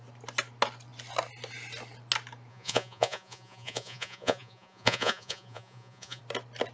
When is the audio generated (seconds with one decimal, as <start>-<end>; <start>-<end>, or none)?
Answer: 2.5-6.2